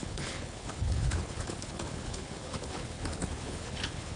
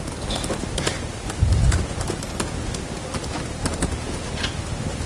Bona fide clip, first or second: second